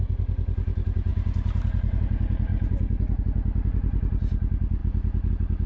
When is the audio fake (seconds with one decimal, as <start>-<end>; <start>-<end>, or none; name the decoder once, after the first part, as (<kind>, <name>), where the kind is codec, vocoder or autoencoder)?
none